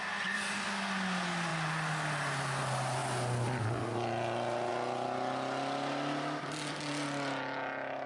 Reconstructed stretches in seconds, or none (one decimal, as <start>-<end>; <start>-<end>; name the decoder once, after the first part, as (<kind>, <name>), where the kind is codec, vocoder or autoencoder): none